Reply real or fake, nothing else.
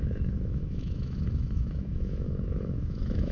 fake